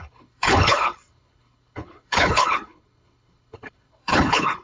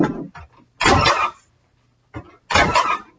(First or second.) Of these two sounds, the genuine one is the second